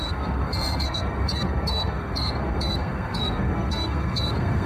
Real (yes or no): no